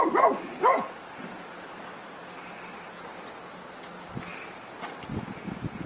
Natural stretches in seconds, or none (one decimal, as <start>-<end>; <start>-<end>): 0.0-5.9